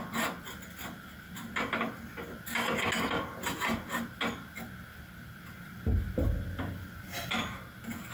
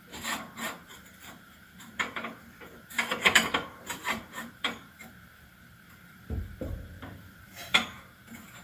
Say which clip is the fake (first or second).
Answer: second